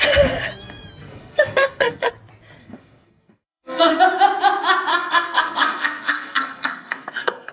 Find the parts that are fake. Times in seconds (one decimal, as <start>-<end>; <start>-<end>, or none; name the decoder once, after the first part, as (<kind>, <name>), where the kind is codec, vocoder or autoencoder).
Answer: 1.0-2.1 (codec, SNAC); 2.6-4.0; 4.9-7.5